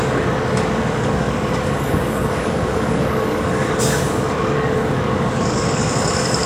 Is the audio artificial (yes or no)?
yes